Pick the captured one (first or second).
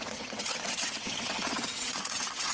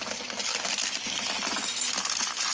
second